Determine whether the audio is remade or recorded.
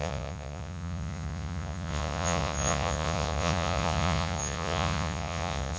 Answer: remade